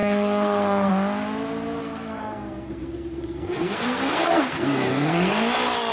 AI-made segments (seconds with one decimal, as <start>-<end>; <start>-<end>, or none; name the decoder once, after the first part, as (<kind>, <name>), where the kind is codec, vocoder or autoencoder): 0.0-0.9 (codec, SNAC); 1.8-5.3